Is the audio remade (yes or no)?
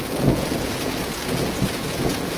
yes